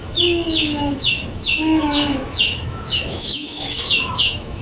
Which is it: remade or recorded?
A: remade